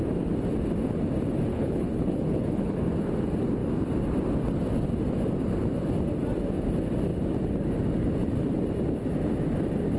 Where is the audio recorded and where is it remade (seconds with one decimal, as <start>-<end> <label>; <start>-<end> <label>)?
0.0-1.5 recorded; 1.5-2.8 remade; 2.8-10.0 recorded

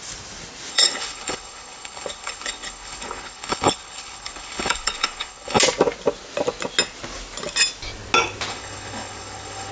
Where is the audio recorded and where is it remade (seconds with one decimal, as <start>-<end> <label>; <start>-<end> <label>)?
0.0-0.7 recorded; 0.7-5.6 remade; 5.6-8.5 recorded; 8.5-9.7 remade

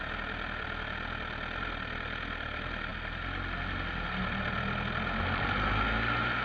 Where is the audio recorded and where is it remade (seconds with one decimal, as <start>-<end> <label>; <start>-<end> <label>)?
0.0-6.4 recorded

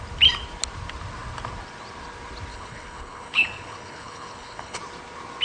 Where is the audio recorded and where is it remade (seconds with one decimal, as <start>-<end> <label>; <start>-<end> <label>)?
0.0-2.5 recorded; 2.5-4.8 remade; 4.8-5.4 recorded

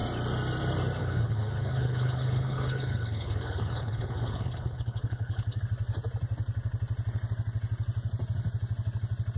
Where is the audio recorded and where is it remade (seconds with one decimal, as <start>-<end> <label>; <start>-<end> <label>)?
0.0-1.0 recorded; 1.0-5.6 remade; 5.6-9.4 recorded